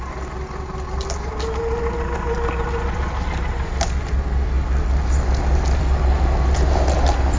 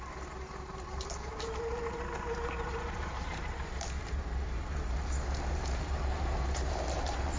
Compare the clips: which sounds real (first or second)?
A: first